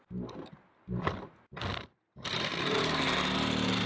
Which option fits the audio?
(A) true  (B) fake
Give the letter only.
A